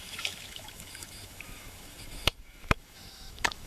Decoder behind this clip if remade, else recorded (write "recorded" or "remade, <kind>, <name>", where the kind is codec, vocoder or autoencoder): remade, autoencoder, DAC-VAE